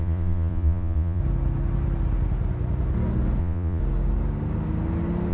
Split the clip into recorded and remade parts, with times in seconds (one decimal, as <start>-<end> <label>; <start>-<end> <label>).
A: 0.0-1.2 remade; 1.2-3.4 recorded; 3.4-3.8 remade; 3.8-5.3 recorded